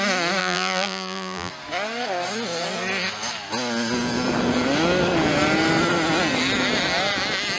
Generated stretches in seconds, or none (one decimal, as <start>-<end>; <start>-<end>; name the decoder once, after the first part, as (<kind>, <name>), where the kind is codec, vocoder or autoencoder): 0.4-1.5 (vocoder, BigVGAN v2)